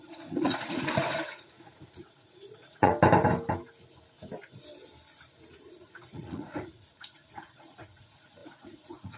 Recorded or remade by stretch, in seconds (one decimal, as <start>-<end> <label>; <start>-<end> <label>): 0.0-2.9 remade; 2.9-5.7 recorded; 5.7-9.2 remade